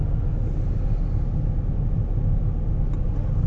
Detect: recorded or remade recorded